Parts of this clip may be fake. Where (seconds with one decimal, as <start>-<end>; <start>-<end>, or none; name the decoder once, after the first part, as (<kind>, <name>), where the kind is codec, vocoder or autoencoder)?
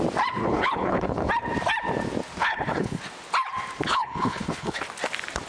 0.4-1.3 (codec, HILCodec); 2.4-3.0; 3.9-4.8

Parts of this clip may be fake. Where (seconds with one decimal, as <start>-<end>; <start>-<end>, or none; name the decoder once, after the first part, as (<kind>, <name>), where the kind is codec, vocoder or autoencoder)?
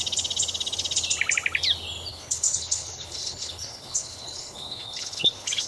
2.1-5.7 (codec, HILCodec)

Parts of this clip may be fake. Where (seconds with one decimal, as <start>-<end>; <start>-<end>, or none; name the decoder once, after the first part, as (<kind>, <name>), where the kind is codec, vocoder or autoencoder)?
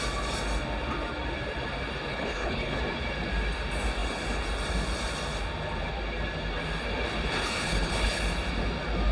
2.1-2.8 (codec, HILCodec); 7.4-8.2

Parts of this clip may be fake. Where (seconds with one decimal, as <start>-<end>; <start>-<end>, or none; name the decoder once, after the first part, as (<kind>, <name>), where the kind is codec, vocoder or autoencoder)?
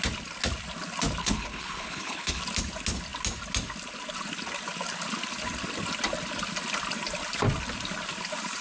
1.2-2.4 (codec, HILCodec)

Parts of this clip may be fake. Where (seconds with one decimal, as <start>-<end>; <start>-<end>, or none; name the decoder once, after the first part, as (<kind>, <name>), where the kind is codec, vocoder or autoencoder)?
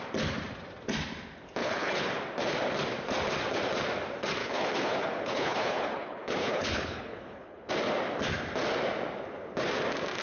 1.6-2.2 (codec, HILCodec); 4.4-7.7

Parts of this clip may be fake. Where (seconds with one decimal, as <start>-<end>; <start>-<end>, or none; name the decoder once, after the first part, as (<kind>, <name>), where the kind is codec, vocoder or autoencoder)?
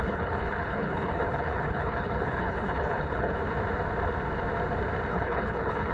0.0-3.4 (codec, HILCodec); 5.1-5.9